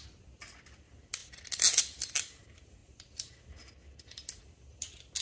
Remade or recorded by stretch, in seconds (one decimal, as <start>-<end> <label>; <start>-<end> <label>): 0.0-5.2 recorded